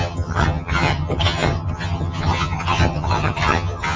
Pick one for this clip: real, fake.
fake